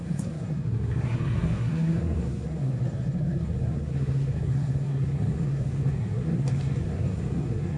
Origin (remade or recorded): remade